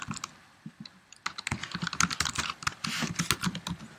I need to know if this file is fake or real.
real